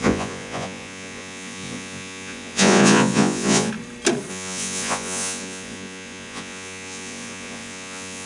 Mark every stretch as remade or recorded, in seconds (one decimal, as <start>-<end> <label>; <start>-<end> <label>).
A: 0.0-3.7 remade; 3.7-4.3 recorded; 4.3-8.3 remade